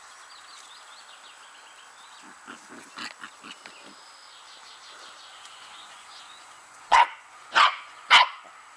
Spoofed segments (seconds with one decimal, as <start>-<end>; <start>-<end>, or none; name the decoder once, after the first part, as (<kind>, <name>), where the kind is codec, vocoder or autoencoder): 5.3-8.1 (vocoder, Vocos)